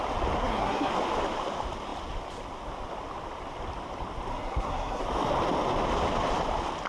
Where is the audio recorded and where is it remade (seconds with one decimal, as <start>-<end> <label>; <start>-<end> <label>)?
0.0-0.4 recorded; 0.4-0.9 remade; 0.9-4.3 recorded; 4.3-5.0 remade; 5.0-6.9 recorded